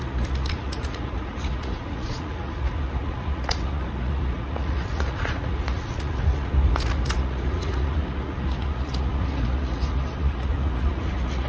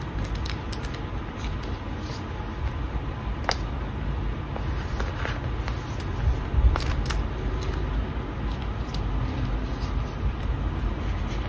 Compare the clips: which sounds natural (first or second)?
second